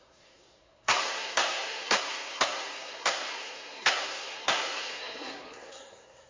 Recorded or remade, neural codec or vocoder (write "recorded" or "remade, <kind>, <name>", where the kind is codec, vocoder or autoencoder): remade, codec, SNAC